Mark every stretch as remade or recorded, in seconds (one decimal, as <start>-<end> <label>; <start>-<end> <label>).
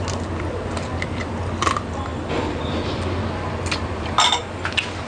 0.0-2.1 recorded; 2.1-3.3 remade; 3.3-5.1 recorded